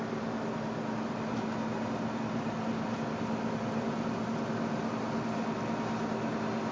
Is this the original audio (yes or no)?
yes